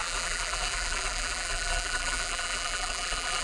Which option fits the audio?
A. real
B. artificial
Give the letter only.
B